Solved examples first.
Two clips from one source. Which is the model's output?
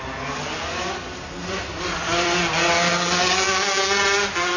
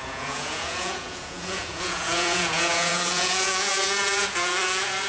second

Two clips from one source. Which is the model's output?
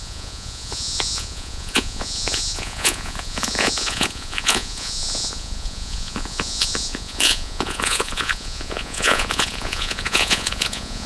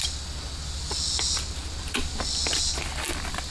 first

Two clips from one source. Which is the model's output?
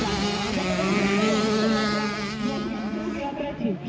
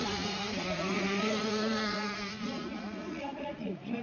second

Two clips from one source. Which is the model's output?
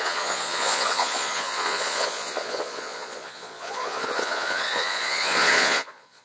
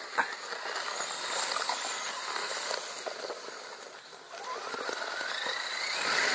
first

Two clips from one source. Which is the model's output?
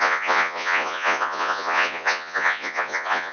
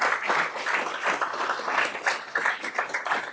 first